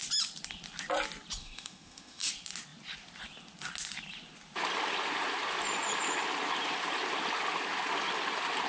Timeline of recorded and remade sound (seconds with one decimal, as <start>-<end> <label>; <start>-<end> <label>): 0.0-1.4 recorded; 1.4-2.3 remade; 2.3-8.7 recorded